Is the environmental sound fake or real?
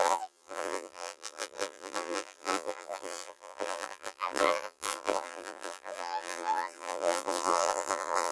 fake